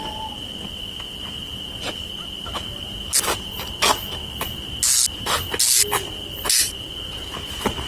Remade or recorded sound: recorded